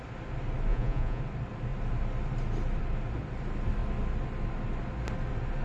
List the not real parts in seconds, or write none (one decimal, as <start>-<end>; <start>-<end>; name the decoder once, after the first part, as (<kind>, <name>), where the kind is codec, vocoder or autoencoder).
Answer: 0.7-1.2 (vocoder, Vocos)